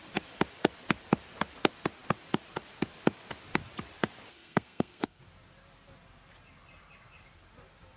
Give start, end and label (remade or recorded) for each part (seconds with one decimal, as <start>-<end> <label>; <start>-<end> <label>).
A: 0.0-4.3 recorded; 4.3-5.2 remade; 5.2-8.0 recorded